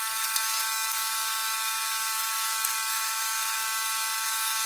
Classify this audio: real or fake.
fake